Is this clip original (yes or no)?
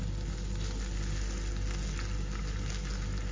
yes